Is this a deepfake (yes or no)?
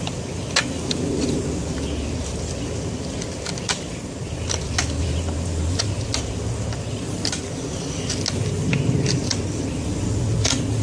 no